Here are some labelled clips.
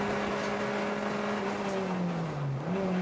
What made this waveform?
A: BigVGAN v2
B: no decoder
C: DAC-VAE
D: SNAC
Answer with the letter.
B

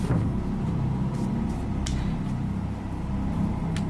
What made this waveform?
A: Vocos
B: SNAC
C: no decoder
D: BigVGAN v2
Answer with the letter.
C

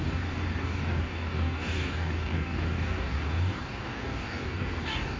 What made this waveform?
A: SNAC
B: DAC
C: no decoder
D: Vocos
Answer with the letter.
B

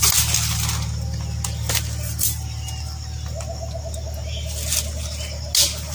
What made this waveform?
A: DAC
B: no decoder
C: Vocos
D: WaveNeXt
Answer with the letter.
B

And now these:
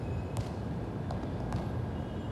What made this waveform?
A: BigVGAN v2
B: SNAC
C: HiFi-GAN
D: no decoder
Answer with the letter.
D